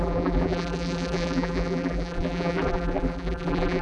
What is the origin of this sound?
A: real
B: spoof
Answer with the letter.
B